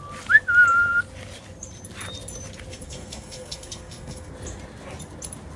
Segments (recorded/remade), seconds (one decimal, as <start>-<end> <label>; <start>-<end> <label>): 0.0-2.7 recorded; 2.7-4.3 remade; 4.3-5.6 recorded